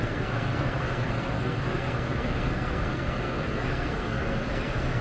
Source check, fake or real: fake